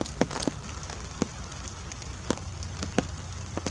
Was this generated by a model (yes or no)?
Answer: no